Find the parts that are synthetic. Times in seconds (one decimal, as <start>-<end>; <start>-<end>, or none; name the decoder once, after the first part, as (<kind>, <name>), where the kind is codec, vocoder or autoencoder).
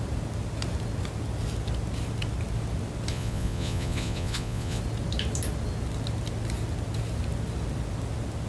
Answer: 3.1-4.8 (vocoder, Vocos)